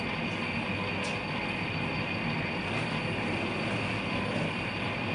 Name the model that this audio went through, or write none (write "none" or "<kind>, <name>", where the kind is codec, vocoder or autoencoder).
none